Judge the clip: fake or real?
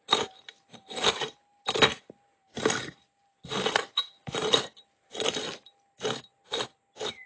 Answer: real